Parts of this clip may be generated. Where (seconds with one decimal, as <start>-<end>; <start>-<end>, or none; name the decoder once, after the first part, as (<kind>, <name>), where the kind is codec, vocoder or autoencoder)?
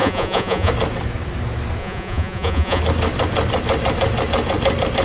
0.0-0.7 (vocoder, Vocos); 1.8-2.8